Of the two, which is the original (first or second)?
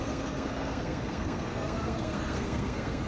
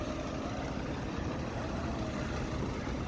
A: second